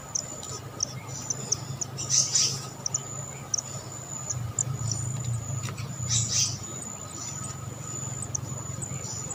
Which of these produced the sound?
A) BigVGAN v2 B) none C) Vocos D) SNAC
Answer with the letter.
B